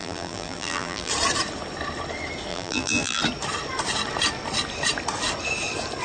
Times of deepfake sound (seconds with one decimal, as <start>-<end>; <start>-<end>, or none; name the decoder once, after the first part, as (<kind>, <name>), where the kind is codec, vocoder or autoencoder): 0.0-1.1 (vocoder, BigVGAN v2); 2.5-3.2